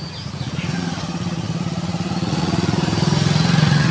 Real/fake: fake